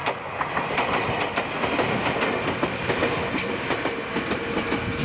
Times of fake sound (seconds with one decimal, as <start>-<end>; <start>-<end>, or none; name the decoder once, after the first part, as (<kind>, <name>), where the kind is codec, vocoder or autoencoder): none